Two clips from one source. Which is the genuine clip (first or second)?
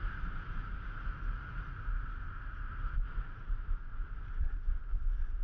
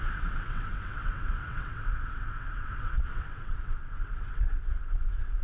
first